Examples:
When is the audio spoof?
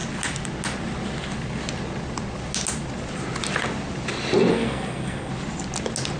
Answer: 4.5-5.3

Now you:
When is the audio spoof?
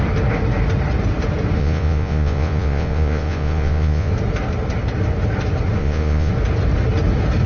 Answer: 1.6-4.1; 5.8-6.3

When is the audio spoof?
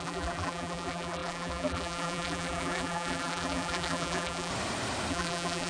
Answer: 0.0-4.5; 5.1-5.7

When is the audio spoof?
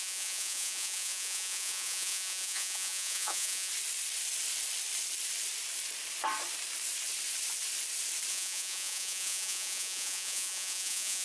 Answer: 0.0-3.7; 8.3-11.2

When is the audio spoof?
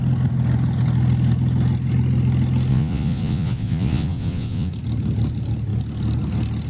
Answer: 2.7-4.7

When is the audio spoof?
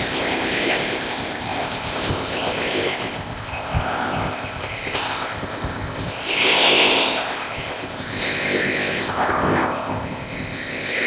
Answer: 0.0-11.1